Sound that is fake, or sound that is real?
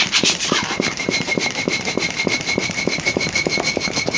fake